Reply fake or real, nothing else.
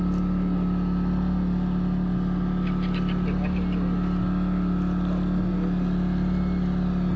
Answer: real